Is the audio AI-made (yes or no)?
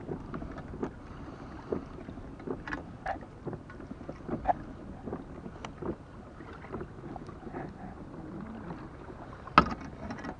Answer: no